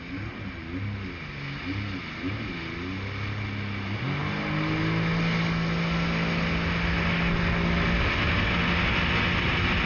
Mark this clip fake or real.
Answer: real